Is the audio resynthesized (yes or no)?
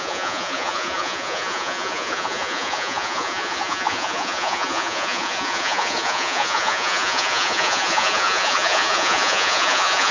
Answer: yes